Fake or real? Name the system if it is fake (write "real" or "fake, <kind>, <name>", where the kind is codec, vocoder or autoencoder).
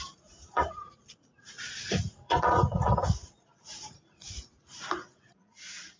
fake, vocoder, Vocos